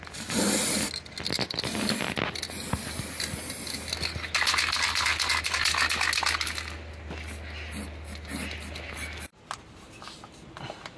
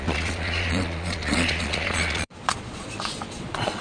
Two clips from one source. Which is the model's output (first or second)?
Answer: second